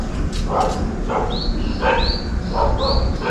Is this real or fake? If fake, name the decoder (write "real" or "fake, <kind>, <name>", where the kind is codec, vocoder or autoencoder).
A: real